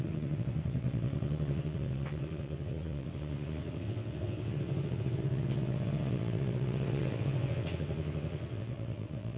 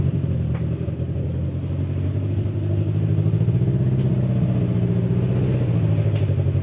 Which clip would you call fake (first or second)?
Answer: first